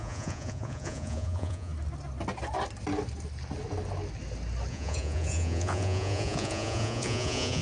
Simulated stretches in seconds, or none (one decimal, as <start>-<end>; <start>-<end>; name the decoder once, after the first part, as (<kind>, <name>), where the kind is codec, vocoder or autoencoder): 0.0-1.7 (vocoder, Vocos); 4.7-7.6